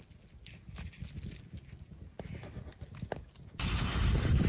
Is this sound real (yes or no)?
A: yes